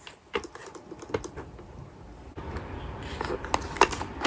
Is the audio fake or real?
real